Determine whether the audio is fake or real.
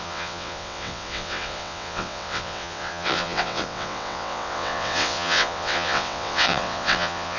fake